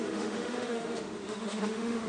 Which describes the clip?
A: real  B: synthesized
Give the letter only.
B